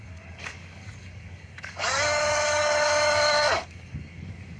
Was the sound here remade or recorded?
remade